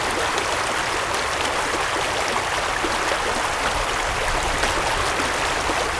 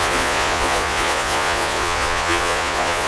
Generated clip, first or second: second